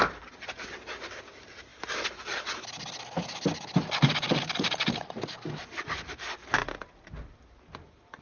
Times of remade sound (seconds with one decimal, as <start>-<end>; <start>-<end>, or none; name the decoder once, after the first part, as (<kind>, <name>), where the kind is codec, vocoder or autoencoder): none